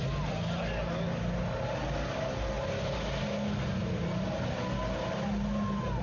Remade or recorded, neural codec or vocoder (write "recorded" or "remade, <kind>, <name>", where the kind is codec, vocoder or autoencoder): recorded